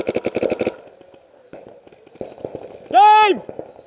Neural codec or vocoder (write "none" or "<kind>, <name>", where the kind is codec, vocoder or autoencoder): none